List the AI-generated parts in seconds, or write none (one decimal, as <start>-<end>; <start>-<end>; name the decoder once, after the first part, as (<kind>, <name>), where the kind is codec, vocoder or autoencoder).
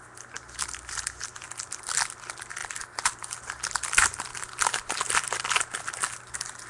2.6-3.2 (vocoder, BigVGAN v2); 4.3-5.0